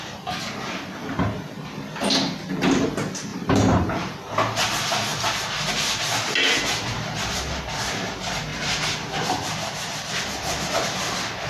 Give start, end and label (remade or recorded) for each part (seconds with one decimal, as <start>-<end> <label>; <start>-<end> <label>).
0.0-3.3 recorded; 3.3-4.1 remade; 4.1-8.5 recorded; 8.5-10.1 remade; 10.1-11.5 recorded